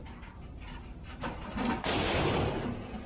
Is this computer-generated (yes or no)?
yes